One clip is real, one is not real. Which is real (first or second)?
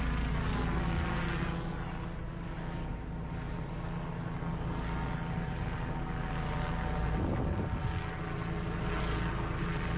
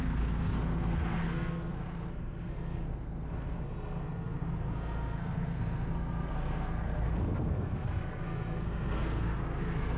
first